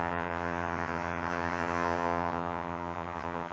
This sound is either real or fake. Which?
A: fake